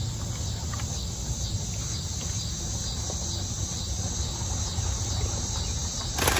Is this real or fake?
real